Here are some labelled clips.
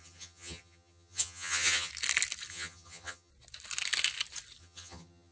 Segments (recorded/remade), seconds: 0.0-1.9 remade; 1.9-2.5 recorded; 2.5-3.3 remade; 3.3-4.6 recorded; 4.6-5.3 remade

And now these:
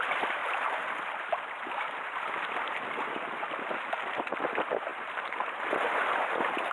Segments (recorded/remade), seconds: 0.0-6.7 recorded

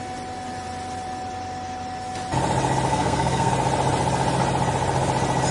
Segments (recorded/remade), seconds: 0.0-2.9 recorded; 2.9-3.5 remade; 3.5-5.5 recorded

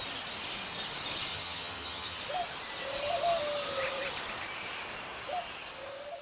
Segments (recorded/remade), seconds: 0.0-1.3 recorded; 1.3-2.2 remade; 2.2-6.2 recorded

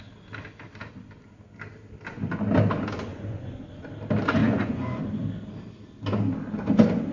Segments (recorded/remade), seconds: 0.0-3.1 recorded; 3.1-3.8 remade; 3.8-4.4 recorded; 4.4-5.0 remade; 5.0-7.1 recorded

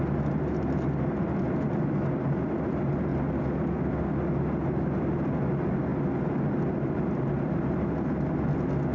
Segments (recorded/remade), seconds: 0.0-8.9 recorded

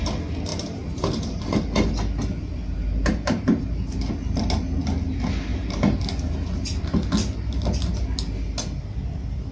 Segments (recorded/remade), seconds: 0.0-0.5 recorded; 0.5-1.4 remade; 1.4-2.6 recorded; 2.6-4.1 remade; 4.1-5.5 recorded; 5.5-6.0 remade; 6.0-9.5 recorded

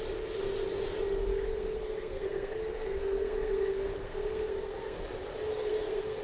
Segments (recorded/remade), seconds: 0.0-1.3 recorded; 1.3-5.0 remade; 5.0-5.5 recorded; 5.5-6.2 remade